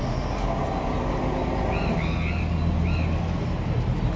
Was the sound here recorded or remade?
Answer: recorded